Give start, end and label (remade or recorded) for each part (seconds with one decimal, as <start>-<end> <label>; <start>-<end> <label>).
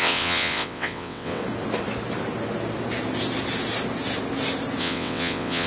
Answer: 0.0-1.4 remade; 1.4-4.8 recorded; 4.8-5.7 remade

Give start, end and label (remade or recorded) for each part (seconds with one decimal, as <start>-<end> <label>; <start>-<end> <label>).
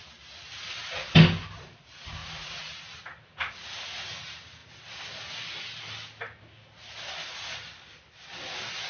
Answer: 0.0-8.9 recorded